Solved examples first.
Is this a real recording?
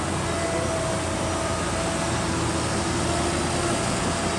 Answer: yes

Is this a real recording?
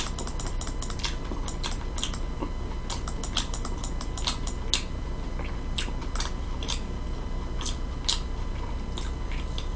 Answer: yes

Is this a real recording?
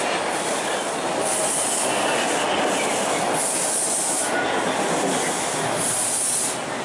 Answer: yes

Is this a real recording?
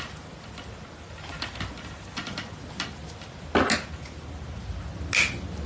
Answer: yes